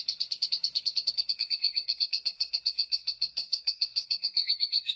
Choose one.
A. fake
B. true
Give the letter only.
A